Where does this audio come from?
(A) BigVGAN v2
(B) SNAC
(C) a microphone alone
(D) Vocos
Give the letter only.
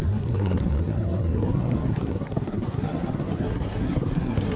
B